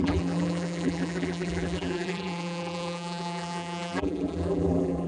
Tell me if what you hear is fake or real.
fake